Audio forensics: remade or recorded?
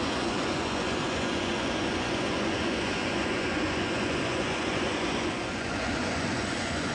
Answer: remade